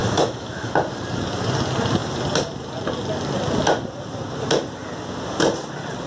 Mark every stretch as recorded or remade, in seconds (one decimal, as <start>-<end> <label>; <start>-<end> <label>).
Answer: 0.0-0.7 remade; 0.7-6.1 recorded